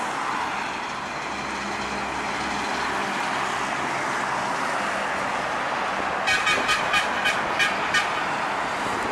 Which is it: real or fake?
real